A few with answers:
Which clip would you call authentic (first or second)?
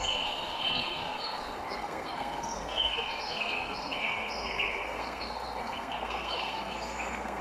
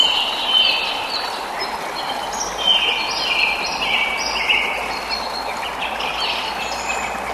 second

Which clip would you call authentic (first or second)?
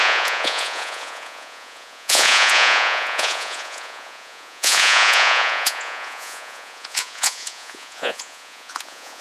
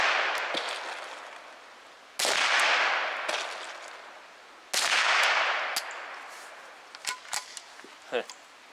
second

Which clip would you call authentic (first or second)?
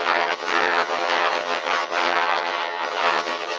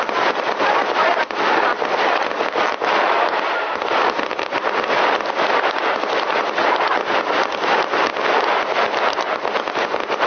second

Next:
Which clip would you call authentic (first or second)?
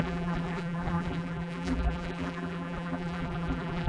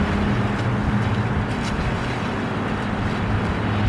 second